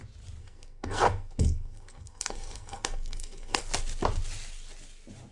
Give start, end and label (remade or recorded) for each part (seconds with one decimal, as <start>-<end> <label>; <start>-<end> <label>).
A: 0.0-0.4 recorded; 0.4-3.6 remade; 3.6-5.3 recorded